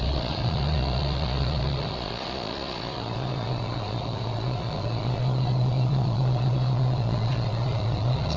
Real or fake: fake